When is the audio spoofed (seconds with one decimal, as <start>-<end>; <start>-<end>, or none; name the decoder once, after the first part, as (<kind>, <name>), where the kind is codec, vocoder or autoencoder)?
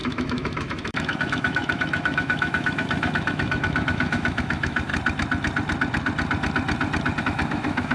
0.0-4.9 (autoencoder, DAC-VAE); 7.2-7.9